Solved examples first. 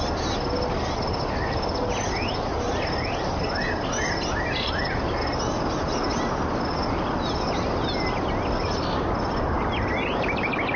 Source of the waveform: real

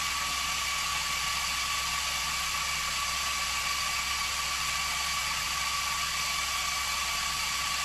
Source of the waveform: real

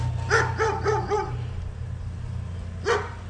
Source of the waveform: real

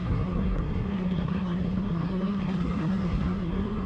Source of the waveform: fake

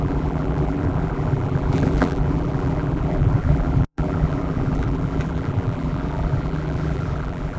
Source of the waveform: fake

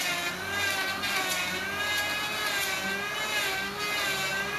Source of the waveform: real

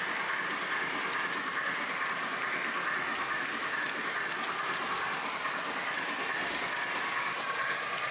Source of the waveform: real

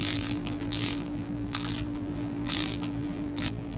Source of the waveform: fake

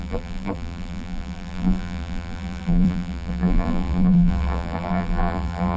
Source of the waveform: fake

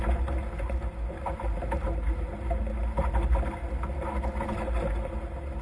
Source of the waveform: real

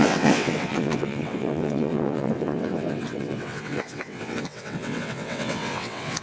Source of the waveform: fake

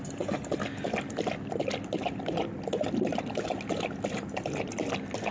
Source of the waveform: real